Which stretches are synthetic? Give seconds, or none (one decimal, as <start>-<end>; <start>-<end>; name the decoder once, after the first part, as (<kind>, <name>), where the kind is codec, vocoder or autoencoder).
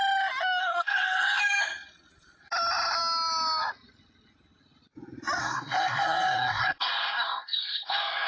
0.6-1.4 (codec, SNAC); 5.4-8.3